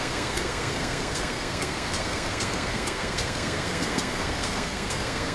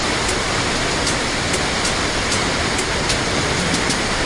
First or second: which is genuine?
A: second